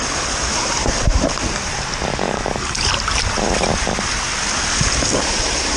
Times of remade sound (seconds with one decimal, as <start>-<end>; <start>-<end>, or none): 2.1-2.9